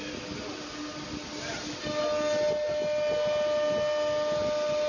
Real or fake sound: real